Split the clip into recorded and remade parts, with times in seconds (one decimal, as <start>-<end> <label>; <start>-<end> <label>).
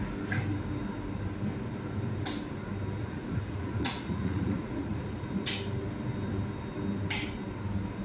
0.0-3.0 recorded; 3.0-5.5 remade; 5.5-8.0 recorded